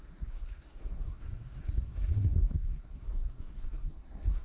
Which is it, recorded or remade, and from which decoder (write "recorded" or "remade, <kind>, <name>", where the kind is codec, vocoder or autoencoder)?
remade, codec, SNAC